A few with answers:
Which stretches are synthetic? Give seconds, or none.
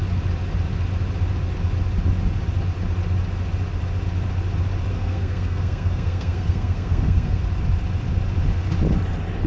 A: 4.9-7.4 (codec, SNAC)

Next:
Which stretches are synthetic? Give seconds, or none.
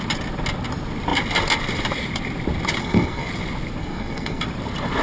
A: 2.8-3.3 (codec, SNAC); 3.8-4.4